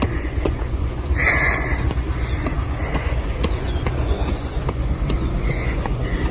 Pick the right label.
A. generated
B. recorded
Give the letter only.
A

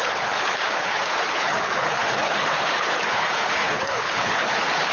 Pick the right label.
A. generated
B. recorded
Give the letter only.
A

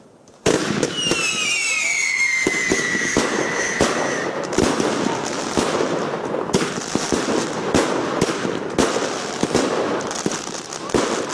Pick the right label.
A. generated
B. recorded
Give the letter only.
B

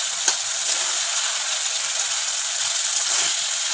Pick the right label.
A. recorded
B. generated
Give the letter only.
A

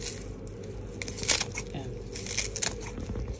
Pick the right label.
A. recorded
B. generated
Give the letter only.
A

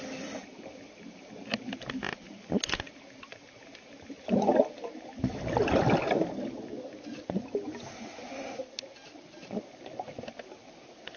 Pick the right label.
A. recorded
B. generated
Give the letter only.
A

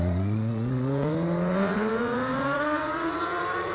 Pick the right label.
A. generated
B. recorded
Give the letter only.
A